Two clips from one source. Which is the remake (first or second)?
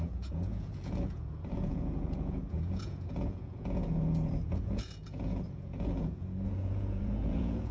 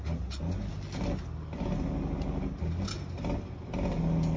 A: first